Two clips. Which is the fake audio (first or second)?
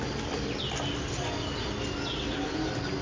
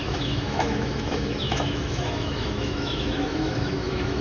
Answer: second